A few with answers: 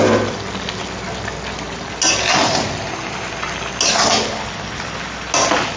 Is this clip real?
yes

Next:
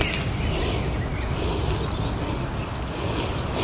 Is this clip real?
yes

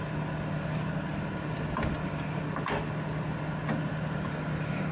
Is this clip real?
yes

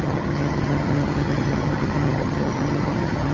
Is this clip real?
no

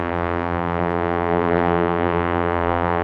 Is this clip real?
no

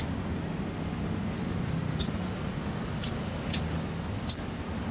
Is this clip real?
yes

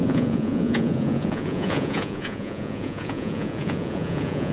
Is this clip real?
no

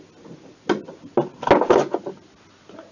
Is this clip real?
yes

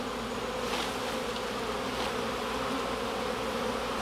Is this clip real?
yes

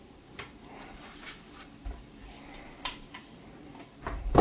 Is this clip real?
no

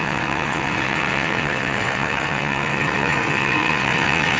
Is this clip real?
no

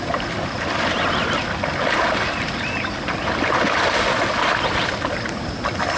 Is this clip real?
yes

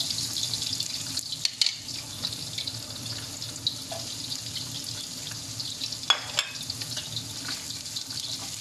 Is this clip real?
yes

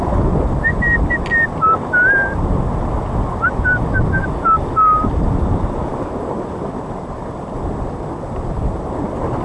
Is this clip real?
yes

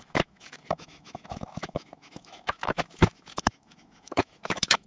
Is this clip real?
no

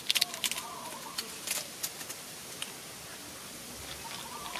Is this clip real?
yes